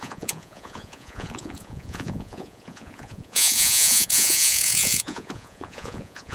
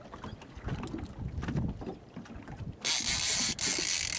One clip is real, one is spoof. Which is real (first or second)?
second